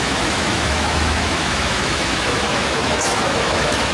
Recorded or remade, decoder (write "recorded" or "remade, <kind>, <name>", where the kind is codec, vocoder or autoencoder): remade, autoencoder, DAC-VAE